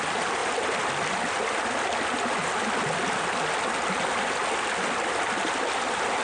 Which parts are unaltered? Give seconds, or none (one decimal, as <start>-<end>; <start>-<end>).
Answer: 0.0-6.2